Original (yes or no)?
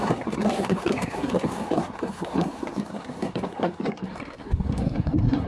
no